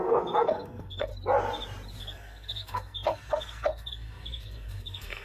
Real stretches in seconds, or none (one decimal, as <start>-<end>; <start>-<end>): 1.1-2.0